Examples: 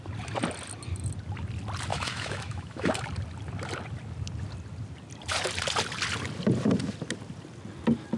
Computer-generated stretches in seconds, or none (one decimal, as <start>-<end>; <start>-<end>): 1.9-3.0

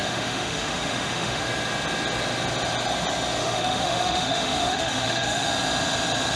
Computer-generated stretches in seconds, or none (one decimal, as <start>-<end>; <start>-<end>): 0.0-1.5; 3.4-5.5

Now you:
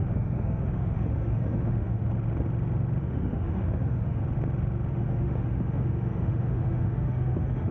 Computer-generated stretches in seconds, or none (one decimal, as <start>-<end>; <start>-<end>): 0.0-2.0; 3.0-4.2; 4.9-7.7